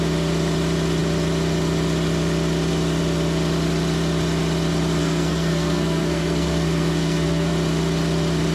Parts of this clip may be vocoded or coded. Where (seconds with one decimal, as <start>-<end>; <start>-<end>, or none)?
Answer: 5.0-7.5